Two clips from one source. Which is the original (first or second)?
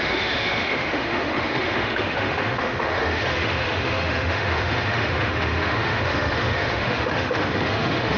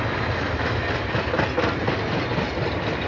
second